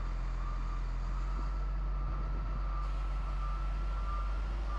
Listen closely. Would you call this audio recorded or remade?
recorded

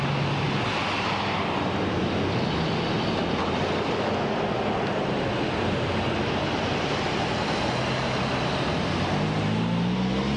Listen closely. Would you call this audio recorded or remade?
recorded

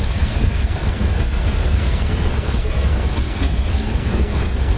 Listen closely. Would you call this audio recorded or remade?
remade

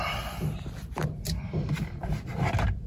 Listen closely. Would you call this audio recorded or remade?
recorded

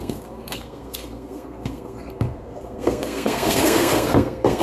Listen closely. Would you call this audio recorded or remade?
remade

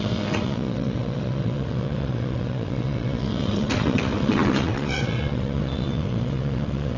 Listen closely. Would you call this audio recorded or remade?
remade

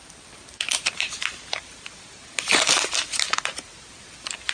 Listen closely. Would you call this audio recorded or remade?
remade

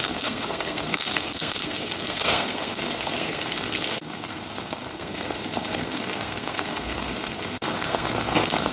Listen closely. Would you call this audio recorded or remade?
remade